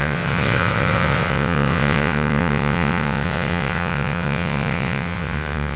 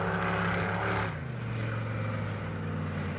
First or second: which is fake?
first